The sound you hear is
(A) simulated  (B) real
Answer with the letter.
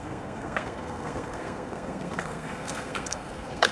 A